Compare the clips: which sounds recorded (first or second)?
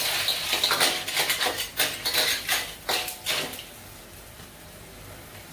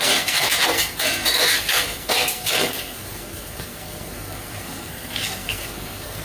first